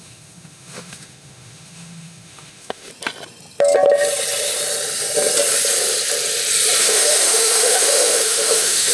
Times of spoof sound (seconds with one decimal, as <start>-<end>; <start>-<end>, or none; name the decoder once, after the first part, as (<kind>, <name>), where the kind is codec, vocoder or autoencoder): 0.0-2.9 (autoencoder, DAC-VAE); 6.8-8.9

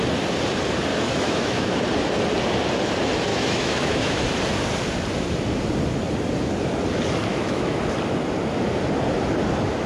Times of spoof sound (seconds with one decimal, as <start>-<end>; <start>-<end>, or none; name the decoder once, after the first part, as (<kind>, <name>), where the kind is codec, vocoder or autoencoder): 0.9-1.8 (autoencoder, DAC-VAE); 3.3-4.2; 7.3-7.8

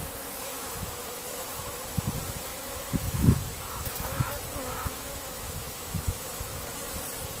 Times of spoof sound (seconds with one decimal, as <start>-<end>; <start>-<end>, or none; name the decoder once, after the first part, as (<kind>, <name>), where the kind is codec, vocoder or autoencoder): 0.0-1.8 (autoencoder, DAC-VAE); 2.5-6.7

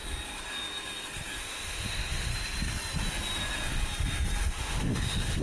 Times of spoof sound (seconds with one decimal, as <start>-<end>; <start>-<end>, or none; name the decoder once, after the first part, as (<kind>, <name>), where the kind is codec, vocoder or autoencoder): 1.4-2.3 (autoencoder, DAC-VAE); 4.4-5.4

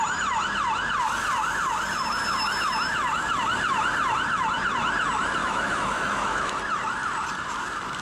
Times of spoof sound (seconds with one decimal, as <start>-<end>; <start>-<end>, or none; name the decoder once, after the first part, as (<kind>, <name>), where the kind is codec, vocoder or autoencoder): 5.4-6.6 (autoencoder, DAC-VAE)

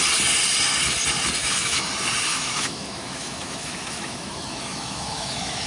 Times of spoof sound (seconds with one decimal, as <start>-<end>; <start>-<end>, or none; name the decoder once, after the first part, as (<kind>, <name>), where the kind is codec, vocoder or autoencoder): 1.4-1.9 (autoencoder, DAC-VAE); 2.3-5.7

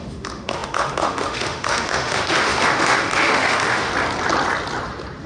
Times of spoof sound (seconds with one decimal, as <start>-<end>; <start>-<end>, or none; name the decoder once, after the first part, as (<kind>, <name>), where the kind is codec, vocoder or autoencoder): 0.0-3.9 (autoencoder, DAC-VAE)

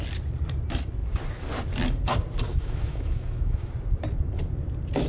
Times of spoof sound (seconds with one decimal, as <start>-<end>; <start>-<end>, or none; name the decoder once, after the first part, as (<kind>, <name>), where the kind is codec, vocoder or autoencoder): 2.5-3.7 (autoencoder, DAC-VAE)